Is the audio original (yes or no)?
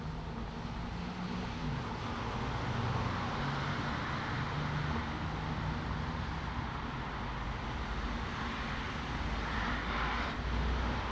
yes